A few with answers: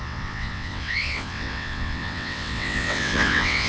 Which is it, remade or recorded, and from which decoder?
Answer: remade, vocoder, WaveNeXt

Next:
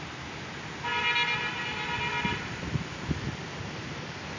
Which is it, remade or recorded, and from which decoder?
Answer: recorded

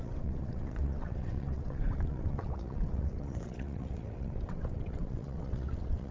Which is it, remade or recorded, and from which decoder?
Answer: remade, vocoder, WaveNeXt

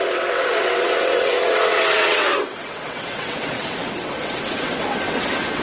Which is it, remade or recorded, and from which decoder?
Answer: remade, vocoder, WaveNeXt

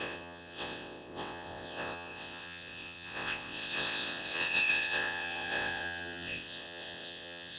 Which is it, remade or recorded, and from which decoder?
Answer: remade, vocoder, WaveNeXt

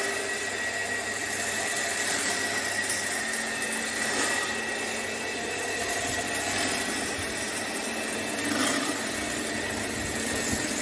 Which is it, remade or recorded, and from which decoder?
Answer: recorded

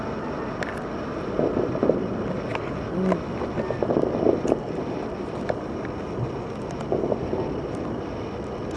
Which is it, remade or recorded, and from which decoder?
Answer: recorded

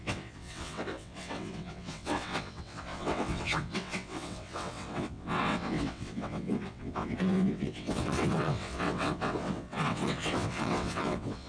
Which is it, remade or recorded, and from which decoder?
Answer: remade, vocoder, WaveNeXt